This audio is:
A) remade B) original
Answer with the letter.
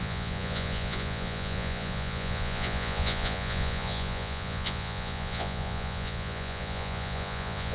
A